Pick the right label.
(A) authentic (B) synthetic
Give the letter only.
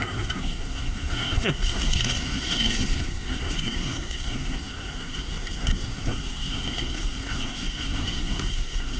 B